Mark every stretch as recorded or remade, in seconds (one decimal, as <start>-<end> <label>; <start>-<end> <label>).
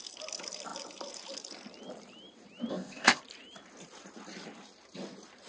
0.0-2.7 recorded; 2.7-3.2 remade; 3.2-5.5 recorded